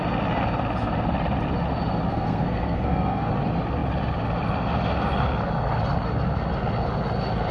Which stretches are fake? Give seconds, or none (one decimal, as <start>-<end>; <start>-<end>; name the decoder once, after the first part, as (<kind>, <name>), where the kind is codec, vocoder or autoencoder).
2.1-3.3 (codec, SNAC)